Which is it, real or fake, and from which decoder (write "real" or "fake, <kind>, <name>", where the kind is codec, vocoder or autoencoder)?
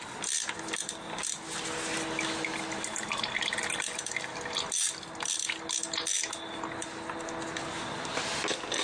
real